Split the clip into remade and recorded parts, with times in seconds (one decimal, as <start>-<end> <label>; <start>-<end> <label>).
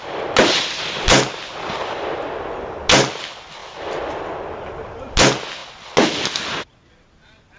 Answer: 0.0-3.6 recorded; 3.6-4.2 remade; 4.2-7.6 recorded